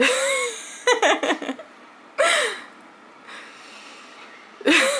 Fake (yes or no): no